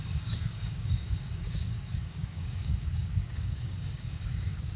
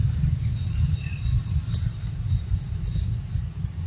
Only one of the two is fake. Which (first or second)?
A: first